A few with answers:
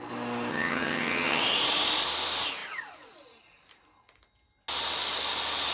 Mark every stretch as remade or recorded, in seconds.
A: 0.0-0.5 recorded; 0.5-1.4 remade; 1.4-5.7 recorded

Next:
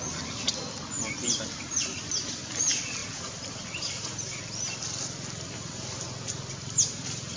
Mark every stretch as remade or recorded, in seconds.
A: 0.0-7.4 recorded